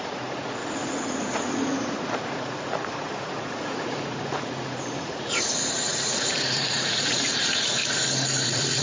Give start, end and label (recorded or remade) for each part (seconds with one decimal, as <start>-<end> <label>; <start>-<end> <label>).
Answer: 0.0-7.8 remade; 7.8-8.4 recorded; 8.4-8.8 remade